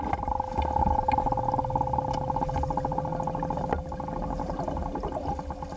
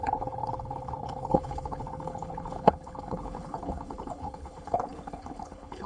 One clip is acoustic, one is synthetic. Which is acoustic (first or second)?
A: first